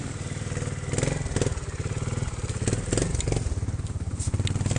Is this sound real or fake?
real